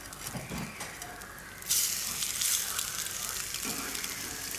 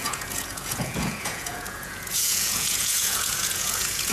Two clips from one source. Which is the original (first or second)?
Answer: first